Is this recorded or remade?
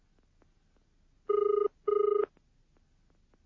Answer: recorded